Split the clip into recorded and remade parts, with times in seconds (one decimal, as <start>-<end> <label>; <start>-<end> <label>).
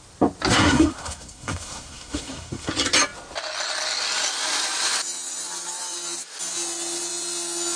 0.0-0.5 recorded; 0.5-2.7 remade; 2.7-7.8 recorded